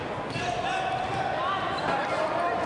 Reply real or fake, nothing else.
real